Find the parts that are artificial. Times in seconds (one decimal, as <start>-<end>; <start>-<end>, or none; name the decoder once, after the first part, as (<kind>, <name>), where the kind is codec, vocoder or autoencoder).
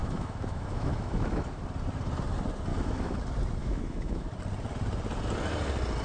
0.0-1.6 (autoencoder, DAC-VAE); 2.7-3.2; 3.6-4.3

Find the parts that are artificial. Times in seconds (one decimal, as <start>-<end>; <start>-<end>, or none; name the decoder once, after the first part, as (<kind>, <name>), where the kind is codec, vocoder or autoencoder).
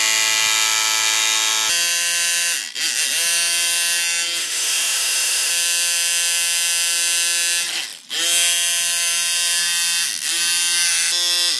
4.4-5.5 (autoencoder, DAC-VAE)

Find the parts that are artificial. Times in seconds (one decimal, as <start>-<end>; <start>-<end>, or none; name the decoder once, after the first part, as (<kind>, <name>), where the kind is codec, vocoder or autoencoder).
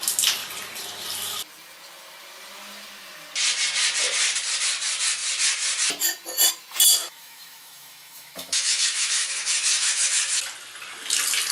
7.0-10.4 (autoencoder, DAC-VAE)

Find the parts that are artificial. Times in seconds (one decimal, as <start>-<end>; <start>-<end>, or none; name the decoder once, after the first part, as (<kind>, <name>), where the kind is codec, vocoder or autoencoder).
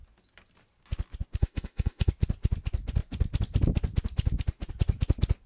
1.4-2.1 (autoencoder, DAC-VAE)